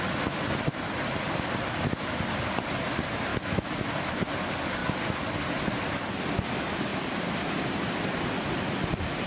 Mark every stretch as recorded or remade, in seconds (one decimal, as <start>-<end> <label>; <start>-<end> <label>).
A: 0.0-3.3 recorded; 3.3-3.9 remade; 3.9-9.3 recorded